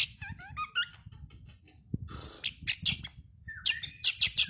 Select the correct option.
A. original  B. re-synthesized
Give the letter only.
A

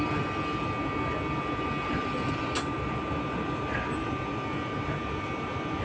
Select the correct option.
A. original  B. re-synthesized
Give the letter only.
A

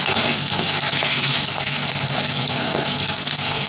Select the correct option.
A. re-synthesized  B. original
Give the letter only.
A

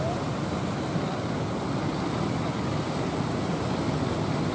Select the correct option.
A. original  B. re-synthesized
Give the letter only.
A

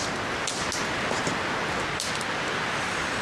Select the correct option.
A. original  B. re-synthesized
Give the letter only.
A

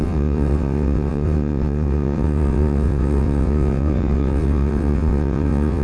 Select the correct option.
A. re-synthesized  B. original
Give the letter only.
A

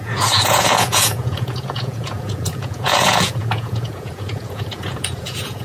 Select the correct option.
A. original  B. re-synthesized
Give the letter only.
B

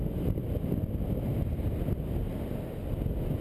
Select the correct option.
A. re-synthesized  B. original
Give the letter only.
B